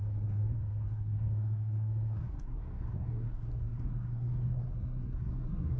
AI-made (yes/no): yes